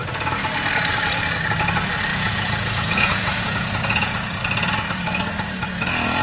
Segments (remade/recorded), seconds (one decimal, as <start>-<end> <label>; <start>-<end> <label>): 0.0-2.1 recorded; 2.1-4.4 remade; 4.4-6.2 recorded